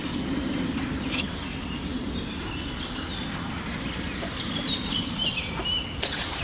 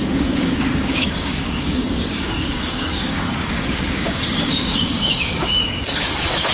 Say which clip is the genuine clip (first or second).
first